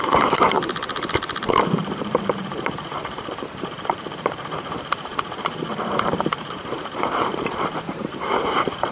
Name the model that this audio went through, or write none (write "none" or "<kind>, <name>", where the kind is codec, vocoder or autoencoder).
vocoder, BigVGAN v2